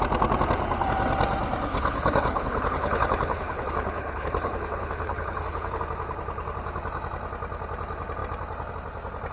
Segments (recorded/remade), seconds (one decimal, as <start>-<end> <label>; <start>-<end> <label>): 0.0-1.7 recorded; 1.7-5.8 remade; 5.8-9.3 recorded